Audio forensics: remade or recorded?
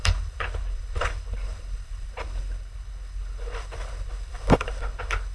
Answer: remade